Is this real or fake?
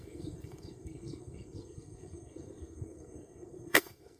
fake